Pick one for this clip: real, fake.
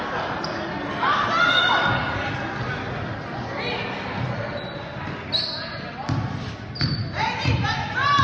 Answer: real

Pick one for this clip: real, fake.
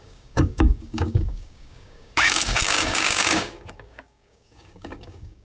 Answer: fake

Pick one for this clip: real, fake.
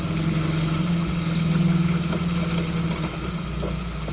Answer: real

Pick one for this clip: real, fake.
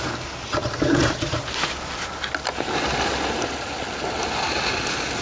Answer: real